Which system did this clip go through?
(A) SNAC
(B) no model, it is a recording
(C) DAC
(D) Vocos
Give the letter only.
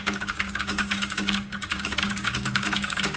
C